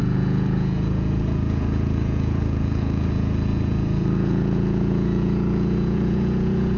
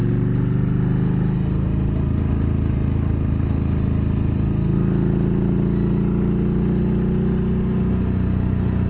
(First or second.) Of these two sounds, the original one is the second